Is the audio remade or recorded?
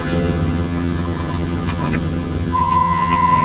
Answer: remade